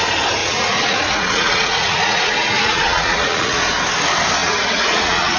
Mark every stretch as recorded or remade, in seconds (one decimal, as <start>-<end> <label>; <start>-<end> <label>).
0.0-0.4 recorded; 0.4-3.6 remade; 3.6-4.4 recorded; 4.4-5.4 remade